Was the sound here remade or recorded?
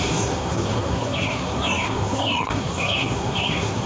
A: remade